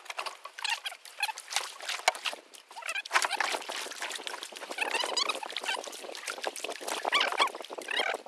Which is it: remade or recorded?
recorded